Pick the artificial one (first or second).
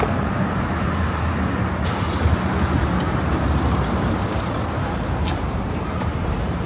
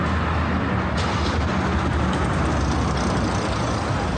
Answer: first